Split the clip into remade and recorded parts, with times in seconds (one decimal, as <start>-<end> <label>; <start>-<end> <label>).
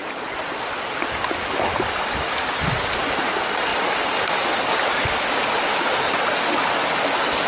0.0-7.5 recorded